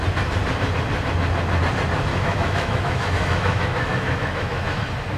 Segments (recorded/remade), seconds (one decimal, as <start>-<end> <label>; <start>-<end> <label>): 0.0-2.1 recorded; 2.1-4.8 remade; 4.8-5.2 recorded